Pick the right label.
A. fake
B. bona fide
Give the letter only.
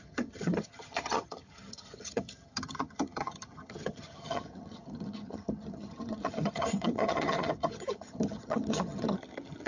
A